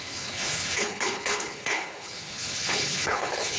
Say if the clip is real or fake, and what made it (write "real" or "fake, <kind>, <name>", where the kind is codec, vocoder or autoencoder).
fake, codec, HILCodec